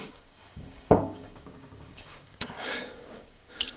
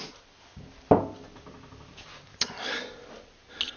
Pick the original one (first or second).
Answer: second